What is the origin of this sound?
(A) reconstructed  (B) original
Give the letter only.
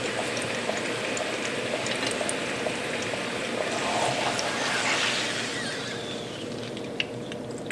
B